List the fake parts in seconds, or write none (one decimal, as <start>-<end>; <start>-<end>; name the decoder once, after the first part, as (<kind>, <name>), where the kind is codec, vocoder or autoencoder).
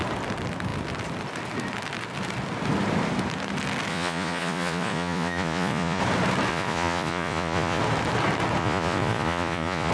3.9-6.0 (vocoder, Vocos); 6.5-7.8; 8.6-9.9